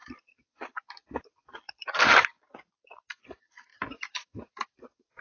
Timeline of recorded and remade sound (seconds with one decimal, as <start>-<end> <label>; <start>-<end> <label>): 0.0-3.1 remade; 3.1-3.7 recorded; 3.7-4.5 remade; 4.5-5.2 recorded